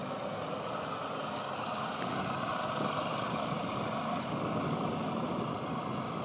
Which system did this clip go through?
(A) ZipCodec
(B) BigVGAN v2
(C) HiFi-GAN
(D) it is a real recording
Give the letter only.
D